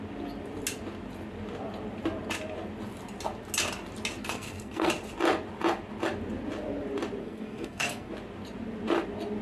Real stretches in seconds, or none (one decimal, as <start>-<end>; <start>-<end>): 0.0-4.2; 4.9-7.2; 8.1-9.4